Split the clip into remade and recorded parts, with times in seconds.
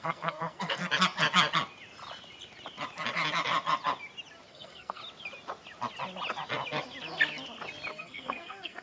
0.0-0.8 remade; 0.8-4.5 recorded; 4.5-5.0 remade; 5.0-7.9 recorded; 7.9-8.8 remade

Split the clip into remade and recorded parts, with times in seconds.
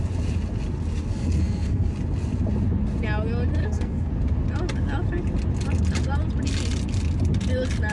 0.0-1.1 recorded; 1.1-1.9 remade; 1.9-3.6 recorded; 3.6-4.1 remade; 4.1-7.9 recorded